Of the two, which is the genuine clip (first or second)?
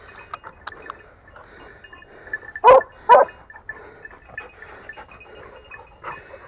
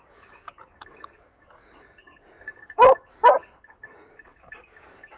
first